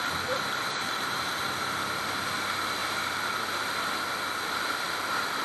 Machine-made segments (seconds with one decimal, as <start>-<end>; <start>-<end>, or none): 0.7-1.4; 2.8-3.7